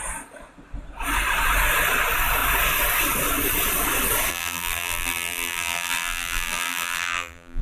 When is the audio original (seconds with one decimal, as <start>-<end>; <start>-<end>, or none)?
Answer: 0.0-4.3